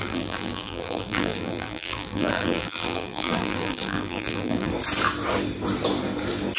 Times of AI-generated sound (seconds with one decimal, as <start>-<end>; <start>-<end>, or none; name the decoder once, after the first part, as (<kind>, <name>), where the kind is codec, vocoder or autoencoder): 0.0-4.7 (vocoder, BigVGAN v2)

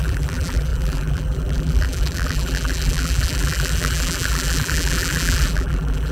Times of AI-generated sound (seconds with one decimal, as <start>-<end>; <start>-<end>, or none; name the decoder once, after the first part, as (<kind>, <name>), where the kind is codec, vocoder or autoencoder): 0.0-6.1 (vocoder, BigVGAN v2)

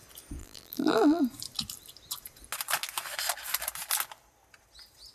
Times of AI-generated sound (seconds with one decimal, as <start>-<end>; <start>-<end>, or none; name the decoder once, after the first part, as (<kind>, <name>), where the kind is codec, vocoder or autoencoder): 0.4-1.2 (vocoder, BigVGAN v2)

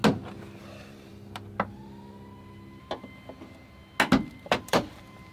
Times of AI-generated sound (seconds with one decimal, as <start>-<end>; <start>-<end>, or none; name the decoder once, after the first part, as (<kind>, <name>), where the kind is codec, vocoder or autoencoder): 0.6-1.1 (vocoder, BigVGAN v2); 4.3-5.3

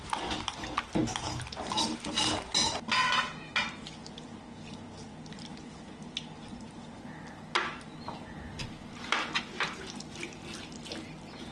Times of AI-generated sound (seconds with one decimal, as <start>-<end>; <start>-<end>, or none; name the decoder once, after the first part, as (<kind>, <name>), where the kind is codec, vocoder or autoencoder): none